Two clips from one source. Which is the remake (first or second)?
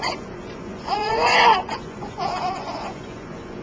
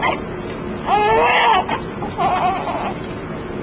first